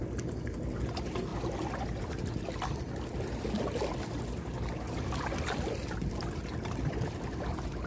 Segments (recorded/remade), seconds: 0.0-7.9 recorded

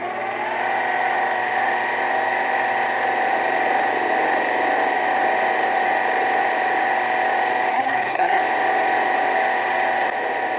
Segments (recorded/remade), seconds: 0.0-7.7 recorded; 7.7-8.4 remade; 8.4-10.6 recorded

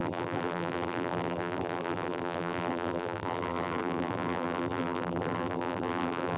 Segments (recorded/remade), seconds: 0.0-6.4 remade

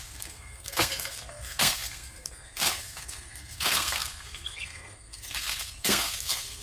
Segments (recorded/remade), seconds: 0.0-6.6 remade

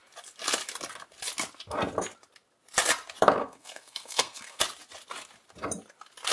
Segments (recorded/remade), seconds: 0.0-3.4 recorded; 3.4-4.6 remade; 4.6-6.3 recorded